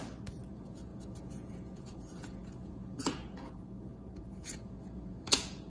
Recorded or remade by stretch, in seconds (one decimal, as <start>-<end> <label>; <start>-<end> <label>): 0.0-0.5 recorded; 0.5-5.7 remade